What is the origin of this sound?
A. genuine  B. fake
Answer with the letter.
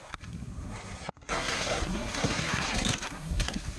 B